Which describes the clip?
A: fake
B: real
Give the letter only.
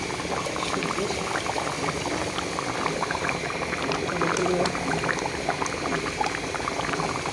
B